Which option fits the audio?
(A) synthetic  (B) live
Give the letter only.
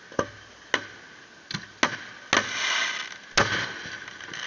B